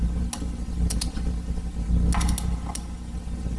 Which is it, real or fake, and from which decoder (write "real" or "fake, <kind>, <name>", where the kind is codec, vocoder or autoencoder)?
real